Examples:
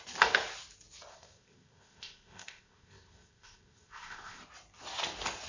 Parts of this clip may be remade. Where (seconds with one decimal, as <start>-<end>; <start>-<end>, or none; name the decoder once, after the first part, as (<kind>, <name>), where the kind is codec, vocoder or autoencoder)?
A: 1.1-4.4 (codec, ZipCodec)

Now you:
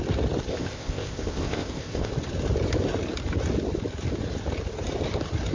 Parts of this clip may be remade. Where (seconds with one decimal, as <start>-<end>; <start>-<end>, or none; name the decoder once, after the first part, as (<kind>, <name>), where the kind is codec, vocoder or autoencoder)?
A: 0.5-2.1 (codec, ZipCodec)

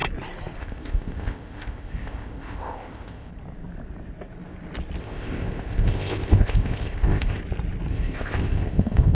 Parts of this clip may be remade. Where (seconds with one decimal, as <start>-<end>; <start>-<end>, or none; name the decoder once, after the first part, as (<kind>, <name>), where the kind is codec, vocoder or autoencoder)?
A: 0.6-3.3 (codec, ZipCodec); 5.0-7.4; 7.9-9.1

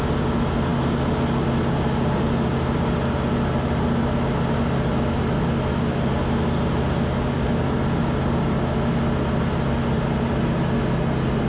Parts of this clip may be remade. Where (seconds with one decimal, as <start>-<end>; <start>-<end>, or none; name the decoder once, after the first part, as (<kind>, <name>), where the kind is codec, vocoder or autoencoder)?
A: none

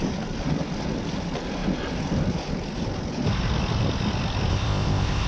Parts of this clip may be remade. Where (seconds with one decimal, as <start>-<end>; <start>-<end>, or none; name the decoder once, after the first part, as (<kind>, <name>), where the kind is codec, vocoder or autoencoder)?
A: 4.5-5.3 (codec, ZipCodec)